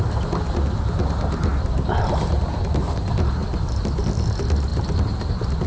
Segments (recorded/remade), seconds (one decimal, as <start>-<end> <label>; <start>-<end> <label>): 0.0-5.7 recorded